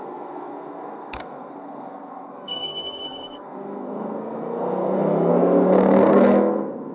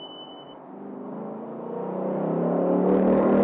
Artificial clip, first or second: first